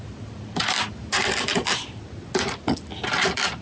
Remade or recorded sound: recorded